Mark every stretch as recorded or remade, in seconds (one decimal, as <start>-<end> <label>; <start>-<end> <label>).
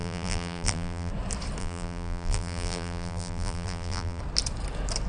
0.0-1.1 remade; 1.1-1.6 recorded; 1.6-4.2 remade; 4.2-5.1 recorded